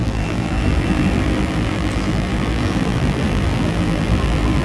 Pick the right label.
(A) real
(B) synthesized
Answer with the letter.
B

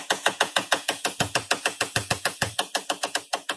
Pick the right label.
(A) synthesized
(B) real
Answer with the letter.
A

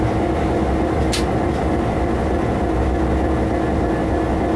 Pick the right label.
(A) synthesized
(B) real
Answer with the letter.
B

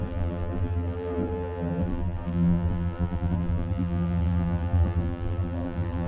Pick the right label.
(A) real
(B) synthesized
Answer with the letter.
B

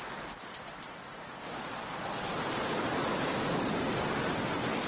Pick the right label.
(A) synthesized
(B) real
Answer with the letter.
B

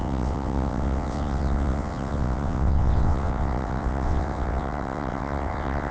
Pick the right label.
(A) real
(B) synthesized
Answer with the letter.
B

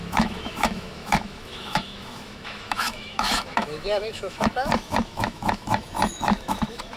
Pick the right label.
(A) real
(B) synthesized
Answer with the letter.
B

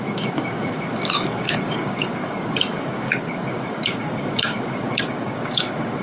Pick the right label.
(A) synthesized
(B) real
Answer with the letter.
A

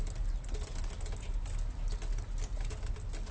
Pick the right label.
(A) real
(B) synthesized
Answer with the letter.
A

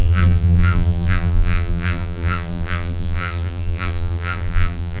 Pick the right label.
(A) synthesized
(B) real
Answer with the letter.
A